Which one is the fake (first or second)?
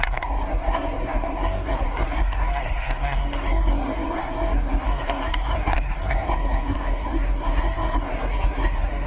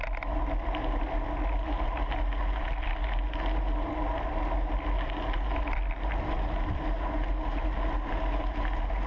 first